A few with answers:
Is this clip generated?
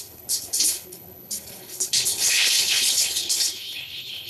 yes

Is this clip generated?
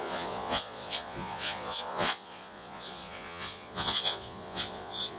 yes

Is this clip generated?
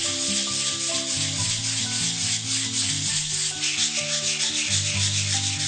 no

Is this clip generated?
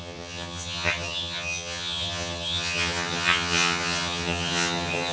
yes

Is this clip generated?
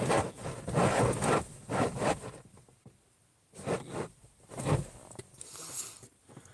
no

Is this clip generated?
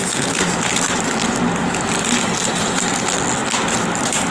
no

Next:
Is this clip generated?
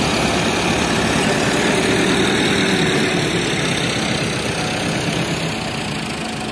no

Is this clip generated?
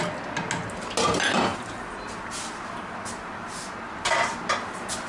no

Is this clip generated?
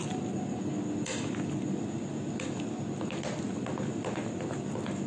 no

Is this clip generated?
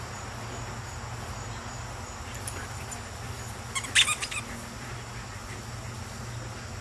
no